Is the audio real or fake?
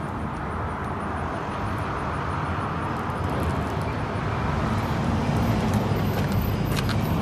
real